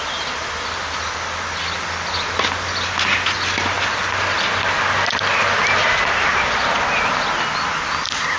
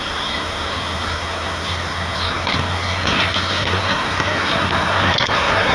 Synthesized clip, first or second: second